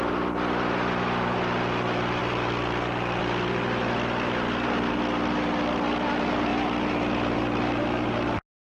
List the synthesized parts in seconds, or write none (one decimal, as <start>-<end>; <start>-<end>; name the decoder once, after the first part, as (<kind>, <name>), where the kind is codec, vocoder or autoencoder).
none